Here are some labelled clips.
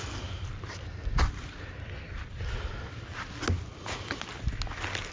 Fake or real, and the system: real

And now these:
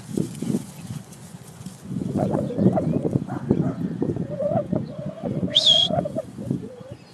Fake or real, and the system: fake, vocoder, Vocos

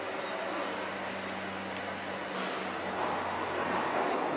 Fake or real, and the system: real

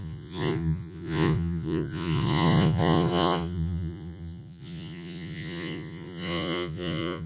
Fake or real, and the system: fake, vocoder, Vocos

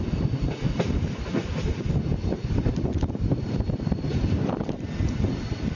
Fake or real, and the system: real